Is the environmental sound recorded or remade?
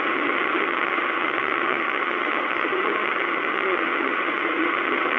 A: remade